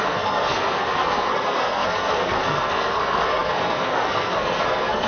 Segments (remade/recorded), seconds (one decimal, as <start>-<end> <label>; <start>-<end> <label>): 0.0-5.1 remade